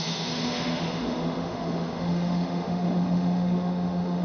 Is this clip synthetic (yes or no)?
yes